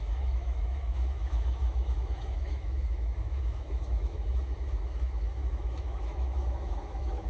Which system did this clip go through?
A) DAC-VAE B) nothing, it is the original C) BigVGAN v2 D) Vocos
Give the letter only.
A